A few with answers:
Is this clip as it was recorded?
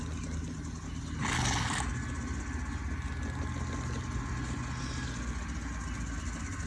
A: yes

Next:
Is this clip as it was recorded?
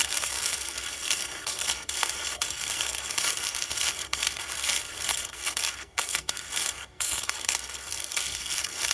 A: no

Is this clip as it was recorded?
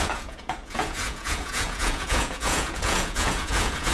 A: no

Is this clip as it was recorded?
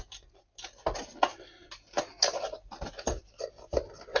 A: yes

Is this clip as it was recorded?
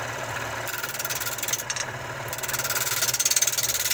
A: yes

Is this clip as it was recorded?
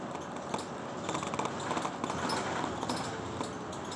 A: yes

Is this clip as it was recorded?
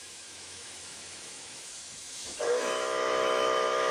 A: no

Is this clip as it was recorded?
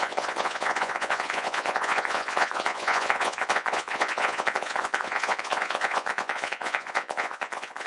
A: no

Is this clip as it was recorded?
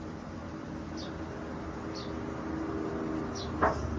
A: yes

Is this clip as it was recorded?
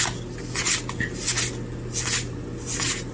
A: yes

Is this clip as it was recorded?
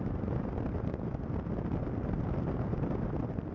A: yes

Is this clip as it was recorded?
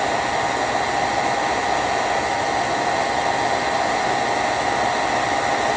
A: yes